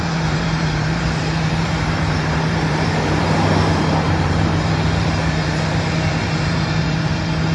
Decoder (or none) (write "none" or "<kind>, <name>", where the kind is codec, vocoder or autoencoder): vocoder, BigVGAN v2